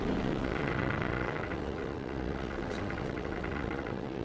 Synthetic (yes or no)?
yes